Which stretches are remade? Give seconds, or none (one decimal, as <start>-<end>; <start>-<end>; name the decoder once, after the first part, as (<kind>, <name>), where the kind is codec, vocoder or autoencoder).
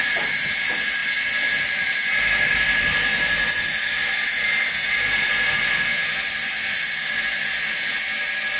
none